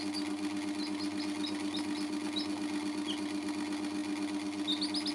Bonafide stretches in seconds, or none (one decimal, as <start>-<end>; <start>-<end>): 0.0-5.1